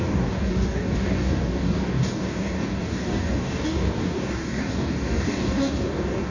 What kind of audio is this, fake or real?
fake